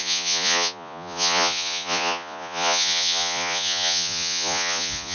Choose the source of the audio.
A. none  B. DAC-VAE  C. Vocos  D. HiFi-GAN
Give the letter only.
C